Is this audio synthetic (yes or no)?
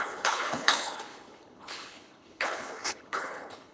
yes